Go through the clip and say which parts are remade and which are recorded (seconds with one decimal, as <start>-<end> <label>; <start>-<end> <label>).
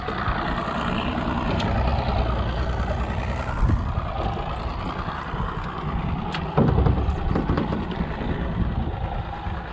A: 0.0-9.7 recorded